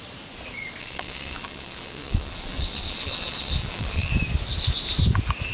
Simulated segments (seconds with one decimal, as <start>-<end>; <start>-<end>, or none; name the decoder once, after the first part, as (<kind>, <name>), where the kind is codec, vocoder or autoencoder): 0.8-4.1 (vocoder, WaveNeXt)